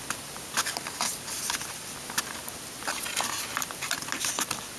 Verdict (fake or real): real